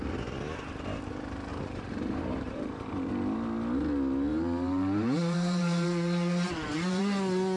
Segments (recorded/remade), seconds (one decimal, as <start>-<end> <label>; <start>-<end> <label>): 0.0-1.5 recorded; 1.5-3.1 remade; 3.1-4.3 recorded; 4.3-7.0 remade; 7.0-7.6 recorded